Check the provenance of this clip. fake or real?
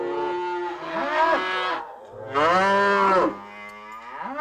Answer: real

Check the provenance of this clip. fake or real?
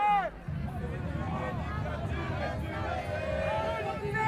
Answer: real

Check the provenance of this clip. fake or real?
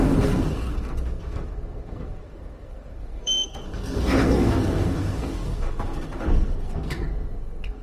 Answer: fake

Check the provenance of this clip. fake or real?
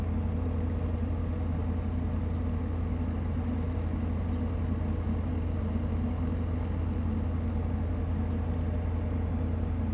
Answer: real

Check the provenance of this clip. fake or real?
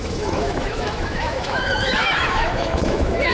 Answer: fake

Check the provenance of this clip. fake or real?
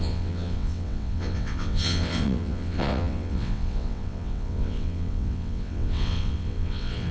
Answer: fake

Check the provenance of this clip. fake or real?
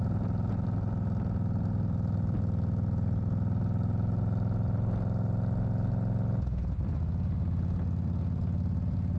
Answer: real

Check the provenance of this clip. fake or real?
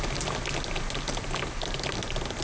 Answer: real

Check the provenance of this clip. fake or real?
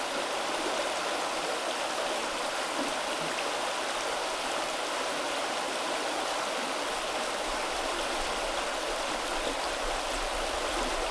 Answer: real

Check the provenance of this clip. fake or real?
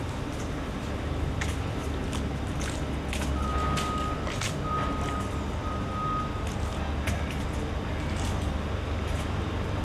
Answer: real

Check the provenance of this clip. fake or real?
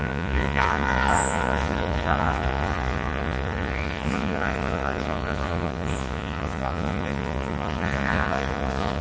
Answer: fake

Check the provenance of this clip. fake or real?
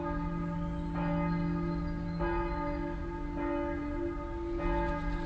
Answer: real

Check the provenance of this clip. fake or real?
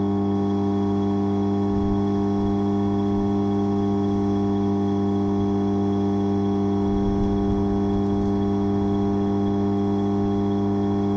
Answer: real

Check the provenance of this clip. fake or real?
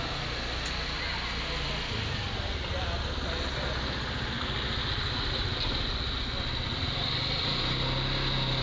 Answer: real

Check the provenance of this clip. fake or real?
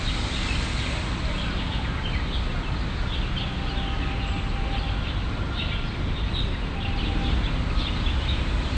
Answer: real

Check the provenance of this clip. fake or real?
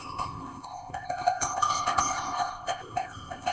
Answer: fake